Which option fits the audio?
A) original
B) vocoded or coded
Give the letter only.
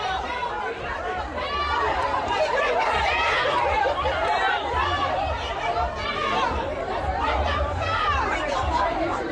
B